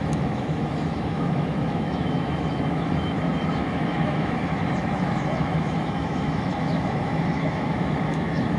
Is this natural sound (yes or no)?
no